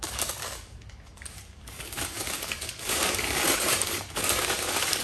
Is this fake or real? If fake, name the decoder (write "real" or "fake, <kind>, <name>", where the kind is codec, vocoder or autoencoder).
fake, codec, DAC